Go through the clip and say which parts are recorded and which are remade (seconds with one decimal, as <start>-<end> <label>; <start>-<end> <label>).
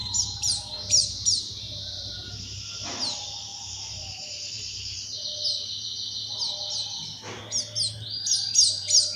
0.0-2.3 remade; 2.3-3.5 recorded; 3.5-5.2 remade; 5.2-9.2 recorded